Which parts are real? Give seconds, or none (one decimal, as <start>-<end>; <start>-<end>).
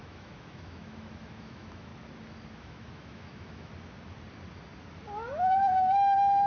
1.9-2.5; 3.7-5.3